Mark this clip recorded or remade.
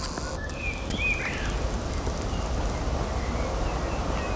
recorded